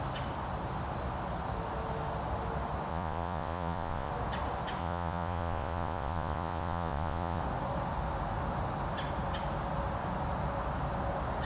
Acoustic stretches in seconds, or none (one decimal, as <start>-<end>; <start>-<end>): 0.0-2.9; 4.1-4.8; 7.4-11.4